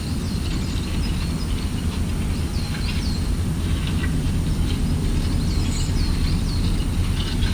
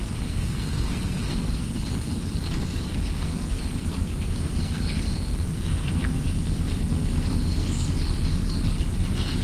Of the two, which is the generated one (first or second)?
second